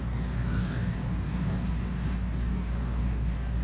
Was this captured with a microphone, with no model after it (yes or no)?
no